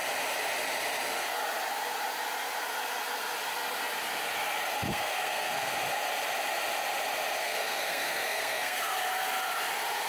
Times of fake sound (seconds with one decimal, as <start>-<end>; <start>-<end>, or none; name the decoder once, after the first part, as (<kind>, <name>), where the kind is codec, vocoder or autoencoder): 4.9-5.7 (codec, SNAC); 7.4-8.8